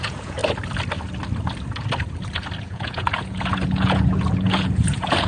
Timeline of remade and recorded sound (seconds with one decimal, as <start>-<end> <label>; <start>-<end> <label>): 0.0-0.4 remade; 0.4-2.6 recorded; 2.6-5.3 remade